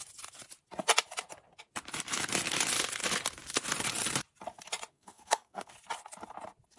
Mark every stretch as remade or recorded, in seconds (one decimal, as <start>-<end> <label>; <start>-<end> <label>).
0.0-4.9 recorded; 4.9-5.7 remade; 5.7-6.8 recorded